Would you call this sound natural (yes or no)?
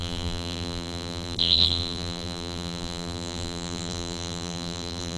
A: no